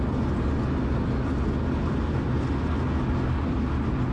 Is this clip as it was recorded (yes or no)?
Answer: yes